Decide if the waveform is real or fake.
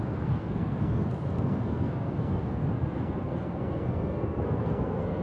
fake